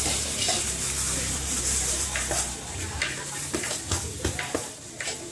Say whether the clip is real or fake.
fake